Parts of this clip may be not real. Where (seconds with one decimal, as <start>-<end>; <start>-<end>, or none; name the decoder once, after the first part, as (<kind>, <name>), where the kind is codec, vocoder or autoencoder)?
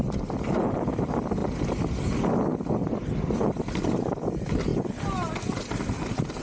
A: none